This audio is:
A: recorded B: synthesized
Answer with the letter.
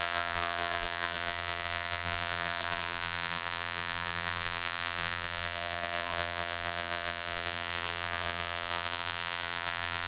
B